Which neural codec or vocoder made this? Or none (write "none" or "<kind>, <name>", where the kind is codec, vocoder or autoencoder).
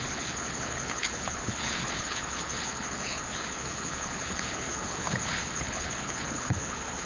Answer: codec, HILCodec